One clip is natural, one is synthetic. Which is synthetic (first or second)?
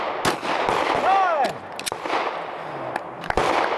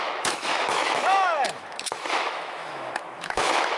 second